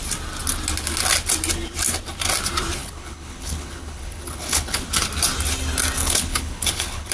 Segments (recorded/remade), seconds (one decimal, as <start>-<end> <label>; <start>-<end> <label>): 0.0-2.8 recorded; 2.8-4.9 remade; 4.9-6.0 recorded; 6.0-7.1 remade